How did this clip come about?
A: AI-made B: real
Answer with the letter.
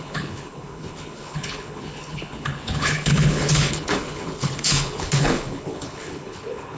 A